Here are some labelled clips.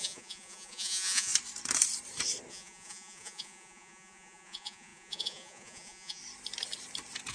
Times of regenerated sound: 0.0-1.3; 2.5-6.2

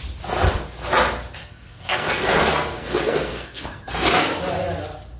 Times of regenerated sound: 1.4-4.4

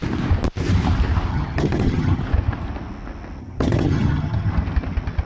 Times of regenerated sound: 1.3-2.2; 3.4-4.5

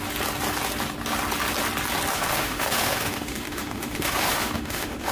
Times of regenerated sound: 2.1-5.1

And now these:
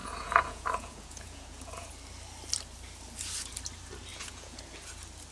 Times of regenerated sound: 0.0-1.9; 4.1-4.6

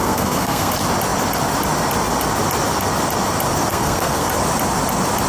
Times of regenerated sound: 0.0-0.7; 3.7-4.3